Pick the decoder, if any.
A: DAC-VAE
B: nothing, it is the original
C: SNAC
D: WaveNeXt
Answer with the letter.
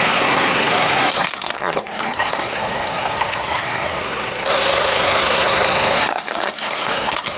C